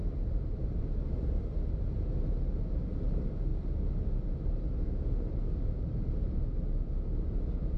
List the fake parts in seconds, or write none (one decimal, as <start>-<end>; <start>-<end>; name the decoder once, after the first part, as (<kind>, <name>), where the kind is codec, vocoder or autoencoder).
none